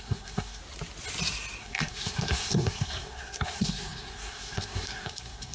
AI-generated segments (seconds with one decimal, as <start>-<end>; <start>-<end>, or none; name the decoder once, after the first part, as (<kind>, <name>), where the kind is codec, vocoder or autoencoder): 0.0-0.6 (codec, SNAC); 1.6-5.5